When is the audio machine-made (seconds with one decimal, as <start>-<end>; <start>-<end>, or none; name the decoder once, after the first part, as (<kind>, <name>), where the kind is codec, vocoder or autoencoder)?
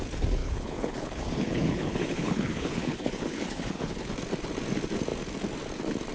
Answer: 0.4-4.1 (codec, HILCodec)